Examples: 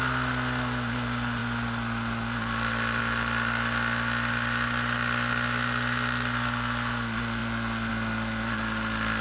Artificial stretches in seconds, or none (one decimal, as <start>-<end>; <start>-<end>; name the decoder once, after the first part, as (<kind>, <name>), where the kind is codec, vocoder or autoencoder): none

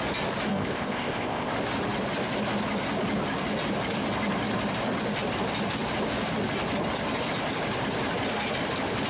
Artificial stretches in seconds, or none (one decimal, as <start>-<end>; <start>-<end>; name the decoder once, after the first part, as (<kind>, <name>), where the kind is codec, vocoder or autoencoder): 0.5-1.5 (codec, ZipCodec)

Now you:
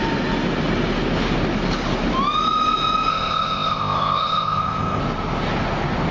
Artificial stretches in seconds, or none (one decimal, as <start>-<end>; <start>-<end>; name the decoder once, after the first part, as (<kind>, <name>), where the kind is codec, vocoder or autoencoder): 3.1-5.0 (codec, ZipCodec)